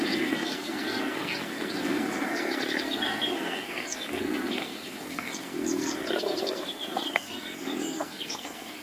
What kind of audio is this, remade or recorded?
remade